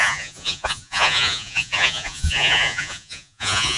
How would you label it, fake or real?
fake